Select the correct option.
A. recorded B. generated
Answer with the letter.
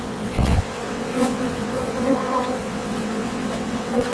B